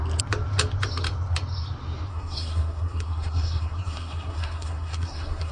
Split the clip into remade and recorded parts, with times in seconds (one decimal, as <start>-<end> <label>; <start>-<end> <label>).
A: 0.0-2.1 recorded; 2.1-5.5 remade

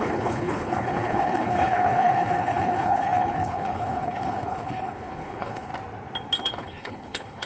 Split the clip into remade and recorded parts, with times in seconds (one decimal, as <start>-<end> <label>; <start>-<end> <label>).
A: 0.0-5.7 remade; 5.7-6.4 recorded; 6.4-7.5 remade

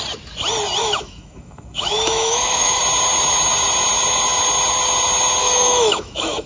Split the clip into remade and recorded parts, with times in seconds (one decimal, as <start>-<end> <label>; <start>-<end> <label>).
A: 0.0-0.8 recorded; 0.8-2.8 remade; 2.8-5.4 recorded; 5.4-6.5 remade